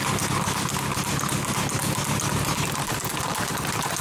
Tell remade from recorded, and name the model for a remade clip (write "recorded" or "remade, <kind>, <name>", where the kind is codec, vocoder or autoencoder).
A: recorded